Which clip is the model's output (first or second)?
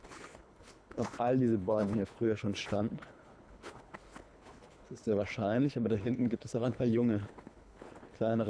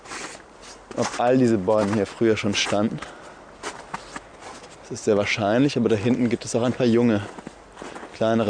first